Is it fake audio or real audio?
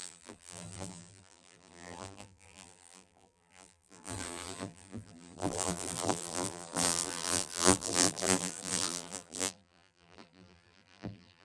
fake